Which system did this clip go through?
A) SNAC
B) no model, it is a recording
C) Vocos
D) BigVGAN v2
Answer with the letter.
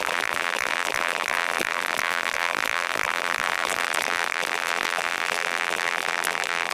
D